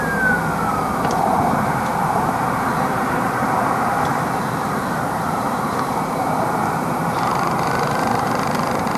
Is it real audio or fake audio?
fake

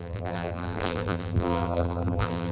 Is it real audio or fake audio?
fake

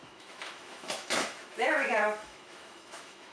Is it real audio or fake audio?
fake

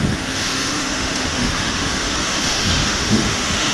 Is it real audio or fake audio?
fake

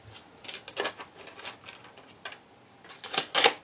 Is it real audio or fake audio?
real